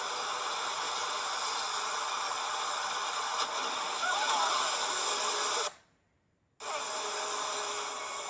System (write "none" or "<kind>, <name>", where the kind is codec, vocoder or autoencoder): none